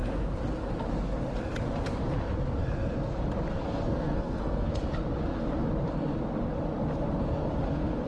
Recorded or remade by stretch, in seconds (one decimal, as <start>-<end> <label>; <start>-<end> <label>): 0.0-3.5 recorded; 3.5-4.7 remade; 4.7-8.1 recorded